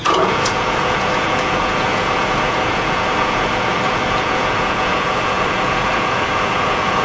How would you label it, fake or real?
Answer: fake